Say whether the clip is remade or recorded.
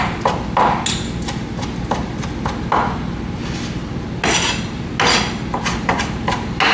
recorded